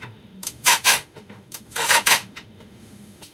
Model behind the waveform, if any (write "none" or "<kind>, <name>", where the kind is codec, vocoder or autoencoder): autoencoder, DAC-VAE